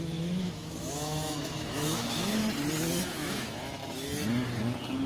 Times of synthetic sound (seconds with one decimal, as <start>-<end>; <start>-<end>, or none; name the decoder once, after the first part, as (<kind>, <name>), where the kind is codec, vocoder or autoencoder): 0.0-2.4 (autoencoder, DAC-VAE); 3.0-3.8